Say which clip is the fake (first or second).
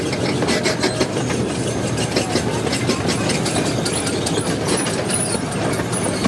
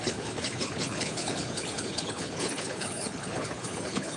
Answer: second